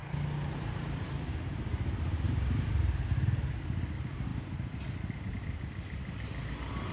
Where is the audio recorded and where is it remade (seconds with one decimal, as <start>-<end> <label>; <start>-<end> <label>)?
0.0-6.9 recorded